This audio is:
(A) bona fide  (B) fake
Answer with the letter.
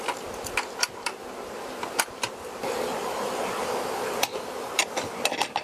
A